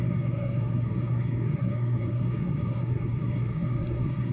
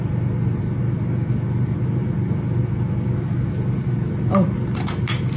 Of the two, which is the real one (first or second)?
second